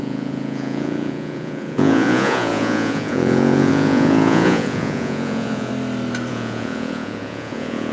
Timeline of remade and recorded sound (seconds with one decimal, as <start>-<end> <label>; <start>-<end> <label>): 0.0-5.7 remade; 5.7-6.3 recorded; 6.3-7.9 remade